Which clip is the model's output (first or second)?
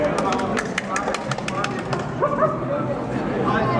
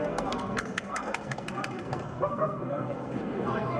second